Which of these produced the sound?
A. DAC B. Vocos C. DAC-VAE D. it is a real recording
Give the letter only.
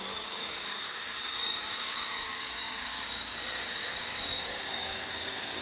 A